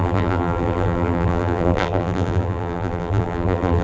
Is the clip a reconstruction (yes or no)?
yes